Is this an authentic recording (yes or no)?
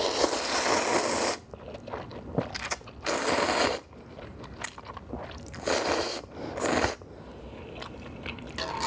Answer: yes